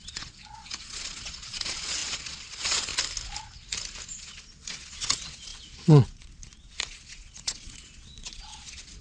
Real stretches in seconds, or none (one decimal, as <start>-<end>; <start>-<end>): 2.9-4.2